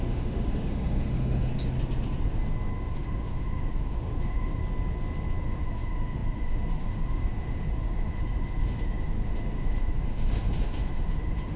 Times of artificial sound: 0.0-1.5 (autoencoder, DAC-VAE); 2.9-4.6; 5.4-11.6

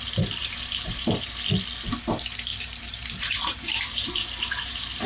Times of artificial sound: 0.4-1.3 (vocoder, BigVGAN v2); 2.5-5.1

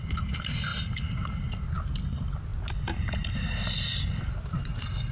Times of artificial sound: none

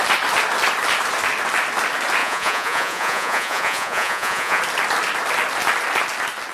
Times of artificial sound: 2.2-4.6 (vocoder, Vocos)